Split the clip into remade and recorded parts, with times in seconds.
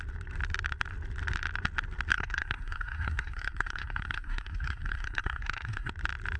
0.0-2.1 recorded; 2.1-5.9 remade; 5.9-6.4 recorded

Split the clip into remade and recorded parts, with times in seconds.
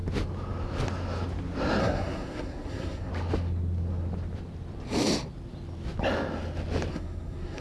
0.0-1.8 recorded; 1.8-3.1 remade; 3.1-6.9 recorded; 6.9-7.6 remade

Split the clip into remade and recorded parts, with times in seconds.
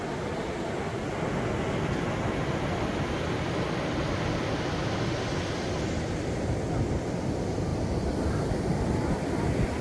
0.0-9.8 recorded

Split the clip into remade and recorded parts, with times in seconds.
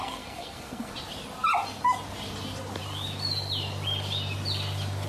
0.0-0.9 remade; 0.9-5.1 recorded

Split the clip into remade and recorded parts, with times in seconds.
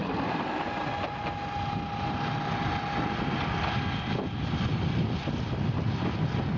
0.0-6.6 recorded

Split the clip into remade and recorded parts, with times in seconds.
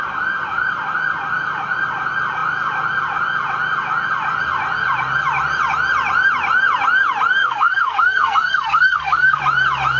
0.0-7.4 recorded; 7.4-9.4 remade; 9.4-10.0 recorded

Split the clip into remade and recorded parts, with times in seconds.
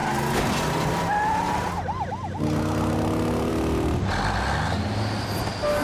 0.0-5.8 recorded